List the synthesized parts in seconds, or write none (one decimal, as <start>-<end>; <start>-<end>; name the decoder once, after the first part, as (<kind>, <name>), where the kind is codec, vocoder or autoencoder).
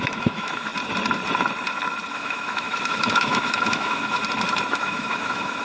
0.0-0.7 (autoencoder, DAC-VAE); 2.1-4.2; 4.7-5.6